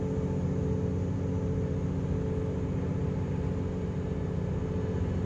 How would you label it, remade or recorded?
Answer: recorded